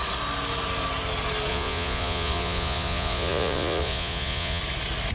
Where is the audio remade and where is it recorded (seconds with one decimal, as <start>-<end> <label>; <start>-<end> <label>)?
0.0-1.5 recorded; 1.5-4.6 remade; 4.6-5.1 recorded